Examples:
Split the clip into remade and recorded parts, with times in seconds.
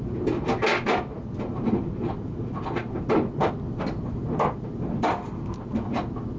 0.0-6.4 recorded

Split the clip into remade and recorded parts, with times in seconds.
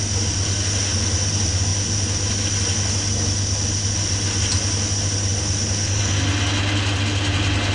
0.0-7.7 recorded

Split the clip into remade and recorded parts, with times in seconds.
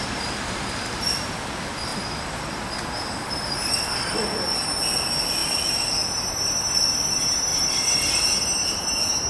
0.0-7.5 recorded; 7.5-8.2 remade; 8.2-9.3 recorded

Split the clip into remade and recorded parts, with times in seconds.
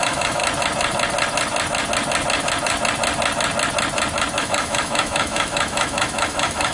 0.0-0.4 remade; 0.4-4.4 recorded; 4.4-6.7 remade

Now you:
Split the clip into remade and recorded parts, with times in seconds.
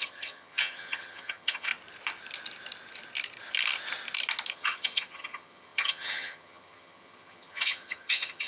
0.0-1.7 remade; 1.7-4.5 recorded; 4.5-8.5 remade